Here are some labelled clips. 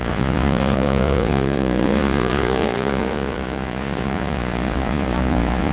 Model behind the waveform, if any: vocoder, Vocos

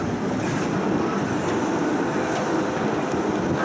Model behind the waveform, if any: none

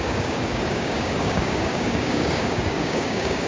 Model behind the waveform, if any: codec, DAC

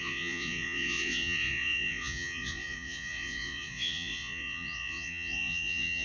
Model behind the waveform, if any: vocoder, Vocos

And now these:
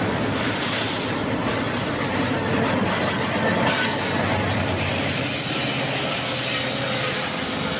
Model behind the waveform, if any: none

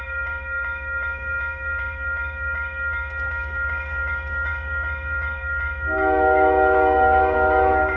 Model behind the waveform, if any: codec, DAC